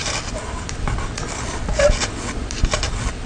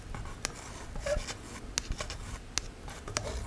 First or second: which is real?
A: second